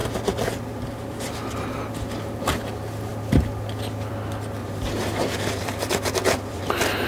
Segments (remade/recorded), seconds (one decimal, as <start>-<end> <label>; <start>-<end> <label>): 0.0-3.1 recorded; 3.1-4.1 remade; 4.1-4.6 recorded; 4.6-6.6 remade; 6.6-7.1 recorded